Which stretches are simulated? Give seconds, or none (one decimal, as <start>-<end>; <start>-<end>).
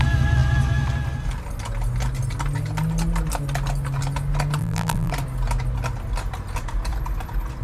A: 4.6-5.1